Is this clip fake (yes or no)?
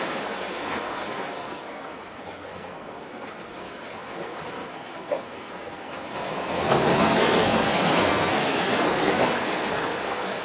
yes